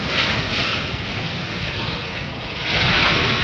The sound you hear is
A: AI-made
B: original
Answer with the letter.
A